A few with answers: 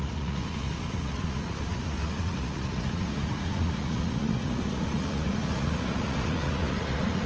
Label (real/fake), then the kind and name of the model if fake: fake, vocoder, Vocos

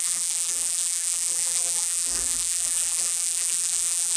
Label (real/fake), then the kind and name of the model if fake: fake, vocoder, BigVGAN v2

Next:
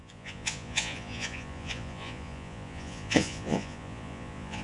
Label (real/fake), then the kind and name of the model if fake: fake, vocoder, Vocos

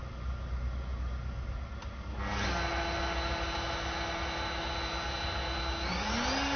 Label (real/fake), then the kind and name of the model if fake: real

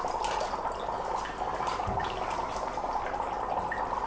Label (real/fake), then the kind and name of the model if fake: real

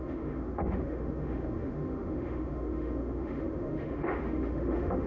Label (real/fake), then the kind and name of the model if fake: fake, autoencoder, DAC-VAE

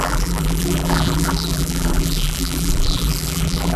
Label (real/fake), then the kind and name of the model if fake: fake, vocoder, BigVGAN v2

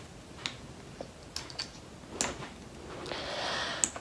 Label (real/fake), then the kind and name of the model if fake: real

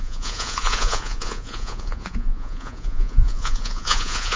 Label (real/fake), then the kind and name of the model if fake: fake, vocoder, Vocos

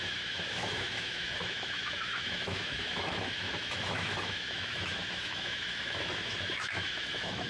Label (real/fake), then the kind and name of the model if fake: fake, autoencoder, DAC-VAE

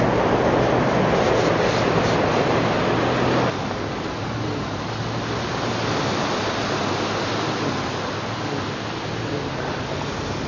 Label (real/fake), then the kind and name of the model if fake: real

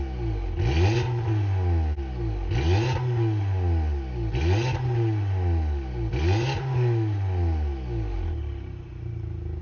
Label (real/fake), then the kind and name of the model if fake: real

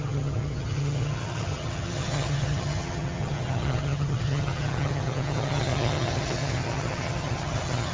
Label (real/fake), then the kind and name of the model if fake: fake, vocoder, HiFi-GAN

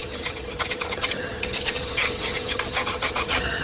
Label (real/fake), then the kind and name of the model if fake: fake, vocoder, HiFi-GAN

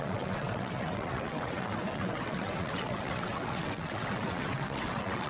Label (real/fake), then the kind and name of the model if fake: fake, vocoder, WaveNeXt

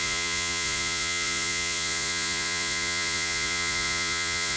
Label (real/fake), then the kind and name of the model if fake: fake, vocoder, Vocos